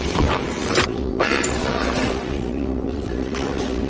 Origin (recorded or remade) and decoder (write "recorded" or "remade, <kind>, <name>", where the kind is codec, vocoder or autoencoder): remade, vocoder, WaveNeXt